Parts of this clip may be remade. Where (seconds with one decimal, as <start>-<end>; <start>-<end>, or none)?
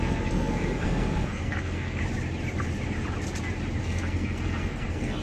0.0-2.0; 3.8-5.2